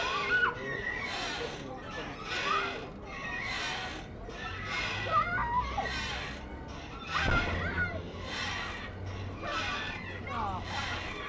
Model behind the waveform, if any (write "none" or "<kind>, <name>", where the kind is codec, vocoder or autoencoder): none